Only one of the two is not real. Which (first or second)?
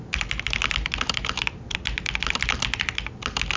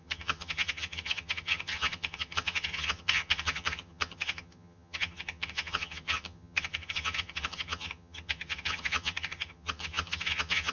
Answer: second